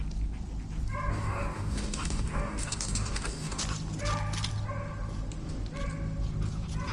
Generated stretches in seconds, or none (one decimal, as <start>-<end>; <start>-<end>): 1.1-3.6